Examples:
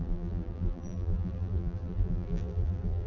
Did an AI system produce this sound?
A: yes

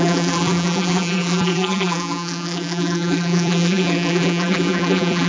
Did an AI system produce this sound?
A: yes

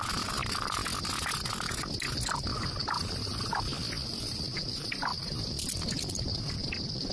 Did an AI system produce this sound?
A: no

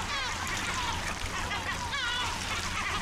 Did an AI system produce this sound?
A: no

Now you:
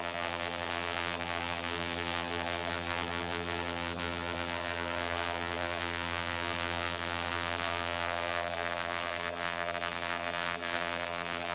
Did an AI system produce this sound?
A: yes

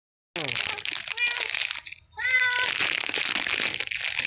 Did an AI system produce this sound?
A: no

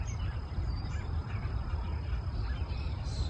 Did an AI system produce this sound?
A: yes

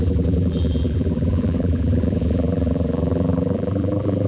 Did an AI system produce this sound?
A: yes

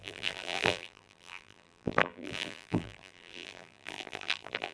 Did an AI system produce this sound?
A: yes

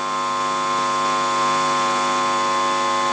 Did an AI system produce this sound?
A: no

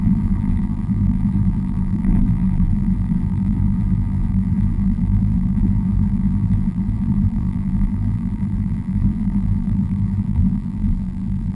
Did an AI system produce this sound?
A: yes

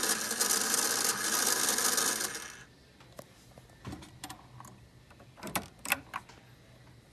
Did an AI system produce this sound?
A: no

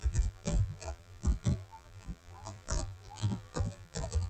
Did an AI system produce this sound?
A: yes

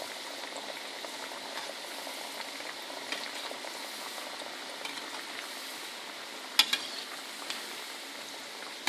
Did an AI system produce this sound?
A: no